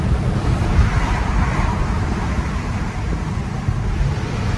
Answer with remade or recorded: remade